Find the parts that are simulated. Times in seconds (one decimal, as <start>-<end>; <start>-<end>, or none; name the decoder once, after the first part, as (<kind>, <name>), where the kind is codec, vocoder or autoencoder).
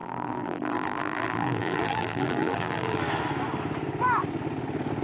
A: 0.0-3.0 (vocoder, BigVGAN v2)